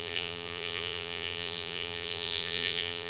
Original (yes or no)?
no